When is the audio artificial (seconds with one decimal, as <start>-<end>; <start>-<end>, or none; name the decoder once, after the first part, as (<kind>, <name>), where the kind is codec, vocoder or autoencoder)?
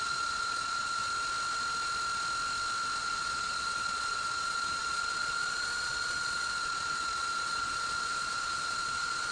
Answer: 0.0-1.0 (vocoder, Vocos); 3.0-9.3